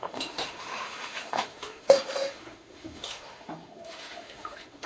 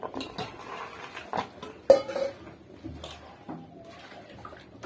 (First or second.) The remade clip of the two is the first